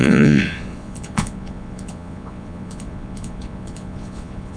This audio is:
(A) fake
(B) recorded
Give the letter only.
A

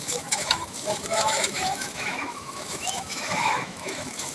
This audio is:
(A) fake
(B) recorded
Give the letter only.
A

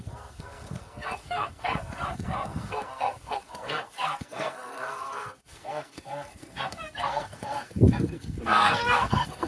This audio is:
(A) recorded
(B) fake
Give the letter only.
B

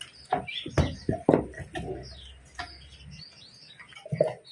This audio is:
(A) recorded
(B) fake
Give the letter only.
A